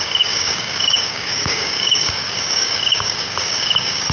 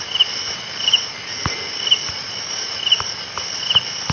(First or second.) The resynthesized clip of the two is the first